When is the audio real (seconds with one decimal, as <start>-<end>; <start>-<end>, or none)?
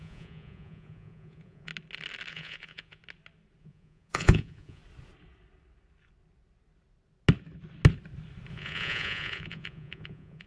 1.7-2.3; 3.0-3.6; 4.8-8.5